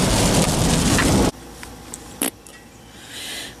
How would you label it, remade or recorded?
recorded